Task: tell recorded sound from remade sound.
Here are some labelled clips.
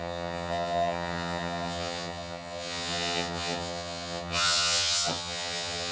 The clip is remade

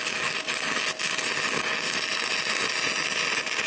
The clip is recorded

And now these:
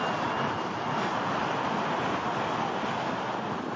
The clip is recorded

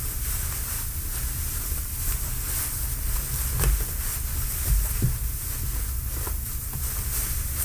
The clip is recorded